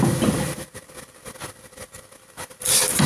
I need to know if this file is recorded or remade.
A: recorded